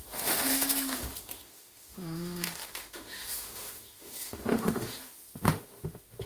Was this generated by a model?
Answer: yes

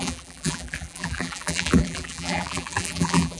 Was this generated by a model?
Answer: yes